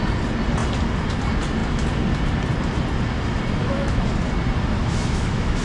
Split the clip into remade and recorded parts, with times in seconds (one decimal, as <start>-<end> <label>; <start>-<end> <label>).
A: 0.0-3.6 recorded; 3.6-4.1 remade; 4.1-4.8 recorded; 4.8-5.6 remade